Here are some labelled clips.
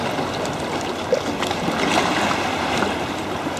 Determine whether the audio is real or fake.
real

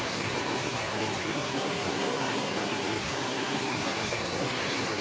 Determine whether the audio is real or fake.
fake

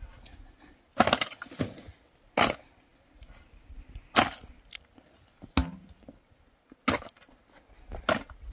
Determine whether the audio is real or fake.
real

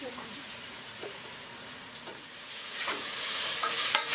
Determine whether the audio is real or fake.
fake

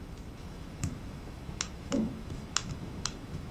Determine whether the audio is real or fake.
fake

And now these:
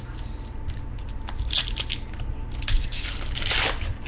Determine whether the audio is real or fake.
real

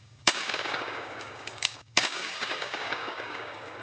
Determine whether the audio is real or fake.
fake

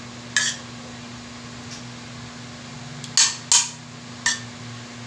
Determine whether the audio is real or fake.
real